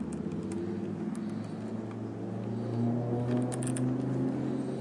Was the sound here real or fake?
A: real